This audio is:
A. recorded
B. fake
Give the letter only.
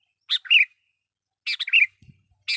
A